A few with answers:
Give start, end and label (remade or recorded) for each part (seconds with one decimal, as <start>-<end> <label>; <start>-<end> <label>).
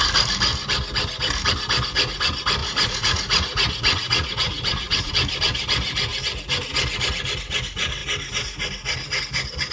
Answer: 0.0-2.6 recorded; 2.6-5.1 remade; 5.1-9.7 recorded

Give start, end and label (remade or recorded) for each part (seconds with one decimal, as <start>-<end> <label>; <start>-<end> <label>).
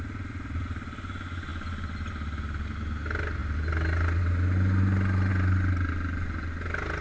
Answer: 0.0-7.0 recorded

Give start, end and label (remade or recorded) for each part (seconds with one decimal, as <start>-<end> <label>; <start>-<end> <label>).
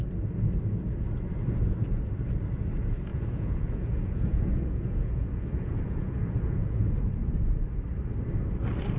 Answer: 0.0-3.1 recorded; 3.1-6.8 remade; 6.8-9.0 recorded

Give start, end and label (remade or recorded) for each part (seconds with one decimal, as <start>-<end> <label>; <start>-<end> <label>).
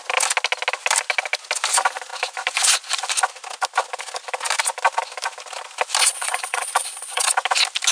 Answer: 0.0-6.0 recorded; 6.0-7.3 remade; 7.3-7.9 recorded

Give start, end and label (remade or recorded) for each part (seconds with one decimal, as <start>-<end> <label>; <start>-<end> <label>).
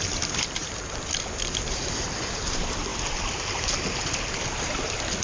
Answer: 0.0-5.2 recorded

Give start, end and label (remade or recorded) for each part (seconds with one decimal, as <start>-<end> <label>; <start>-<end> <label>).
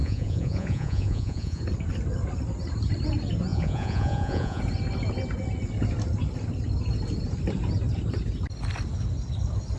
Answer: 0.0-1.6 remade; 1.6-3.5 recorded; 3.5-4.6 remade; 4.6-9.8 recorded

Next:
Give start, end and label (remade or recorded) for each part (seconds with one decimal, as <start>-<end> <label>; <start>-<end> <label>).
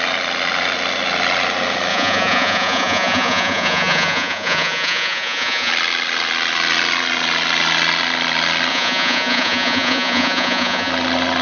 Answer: 0.0-1.9 recorded; 1.9-5.7 remade; 5.7-8.7 recorded; 8.7-10.9 remade; 10.9-11.4 recorded